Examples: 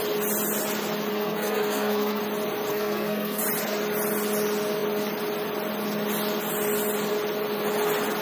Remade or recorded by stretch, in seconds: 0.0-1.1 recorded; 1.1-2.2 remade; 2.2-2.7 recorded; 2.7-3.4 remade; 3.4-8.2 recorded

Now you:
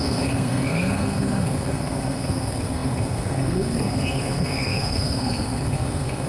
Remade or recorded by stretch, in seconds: 0.0-6.3 remade